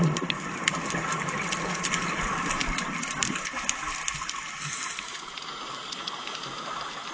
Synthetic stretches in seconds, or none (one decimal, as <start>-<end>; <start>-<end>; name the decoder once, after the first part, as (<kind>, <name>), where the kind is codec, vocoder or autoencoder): 5.1-5.7 (vocoder, Vocos)